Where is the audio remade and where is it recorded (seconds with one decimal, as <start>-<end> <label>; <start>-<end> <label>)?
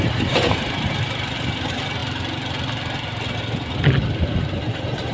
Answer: 0.0-2.0 remade; 2.0-5.1 recorded